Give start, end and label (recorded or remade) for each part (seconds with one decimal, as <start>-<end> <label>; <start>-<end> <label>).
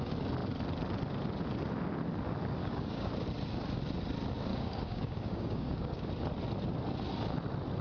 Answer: 0.0-2.6 recorded; 2.6-3.1 remade; 3.1-4.5 recorded; 4.5-6.1 remade; 6.1-7.8 recorded